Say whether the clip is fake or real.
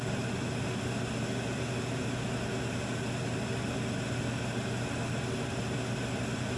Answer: real